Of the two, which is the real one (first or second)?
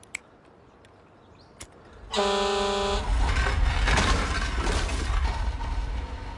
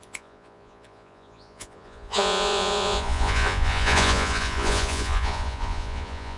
first